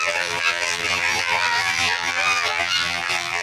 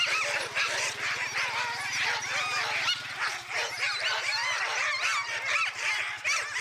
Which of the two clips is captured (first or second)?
second